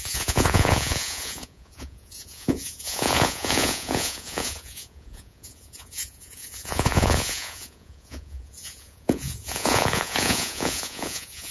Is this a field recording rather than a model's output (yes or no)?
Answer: no